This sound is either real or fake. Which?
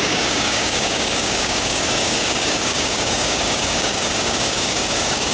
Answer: fake